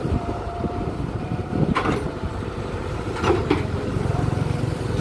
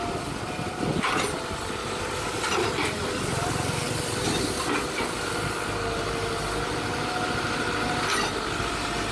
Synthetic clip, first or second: first